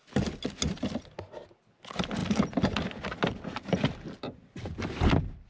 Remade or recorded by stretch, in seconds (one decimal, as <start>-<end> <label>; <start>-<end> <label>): 0.0-5.5 recorded